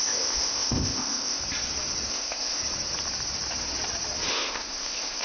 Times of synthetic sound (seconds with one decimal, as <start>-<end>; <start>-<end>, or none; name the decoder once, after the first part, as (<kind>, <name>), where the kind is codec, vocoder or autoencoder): 0.0-1.4 (codec, ZipCodec); 2.1-2.6; 4.3-5.2